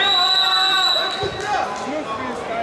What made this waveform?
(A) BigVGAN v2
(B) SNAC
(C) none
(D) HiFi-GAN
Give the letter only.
C